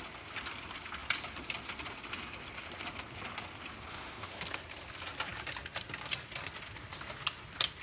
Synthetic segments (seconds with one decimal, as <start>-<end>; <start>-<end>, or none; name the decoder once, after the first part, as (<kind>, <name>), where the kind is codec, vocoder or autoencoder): 3.9-4.4 (autoencoder, DAC-VAE)

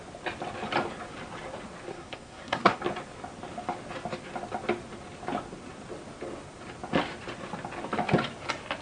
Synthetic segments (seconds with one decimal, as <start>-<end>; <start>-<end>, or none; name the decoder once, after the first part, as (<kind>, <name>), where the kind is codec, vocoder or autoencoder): 1.9-2.8 (codec, SNAC)